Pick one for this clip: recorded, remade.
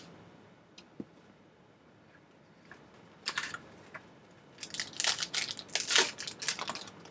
recorded